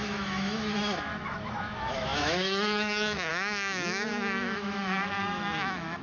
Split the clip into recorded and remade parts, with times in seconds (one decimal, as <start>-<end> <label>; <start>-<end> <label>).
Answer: 0.0-6.0 remade